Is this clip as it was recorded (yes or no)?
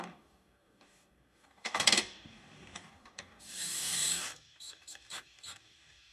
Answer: no